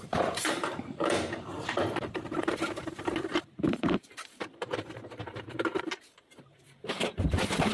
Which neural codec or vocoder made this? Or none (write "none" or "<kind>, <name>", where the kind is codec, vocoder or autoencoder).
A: vocoder, BigVGAN v2